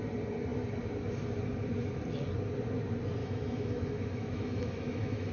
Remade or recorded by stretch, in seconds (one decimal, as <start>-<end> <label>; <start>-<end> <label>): 0.0-3.2 recorded; 3.2-5.3 remade

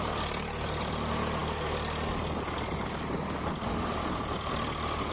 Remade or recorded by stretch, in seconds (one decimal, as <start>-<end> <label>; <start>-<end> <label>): 0.0-5.1 recorded

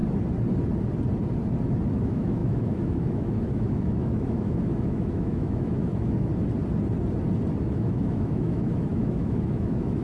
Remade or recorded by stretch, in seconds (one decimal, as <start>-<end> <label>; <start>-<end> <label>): 0.0-1.9 recorded; 1.9-6.3 remade; 6.3-7.6 recorded; 7.6-10.0 remade